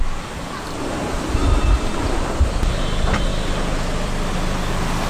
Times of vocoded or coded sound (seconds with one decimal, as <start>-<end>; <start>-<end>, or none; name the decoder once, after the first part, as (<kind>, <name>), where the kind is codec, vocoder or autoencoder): none